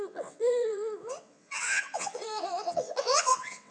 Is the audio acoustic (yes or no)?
no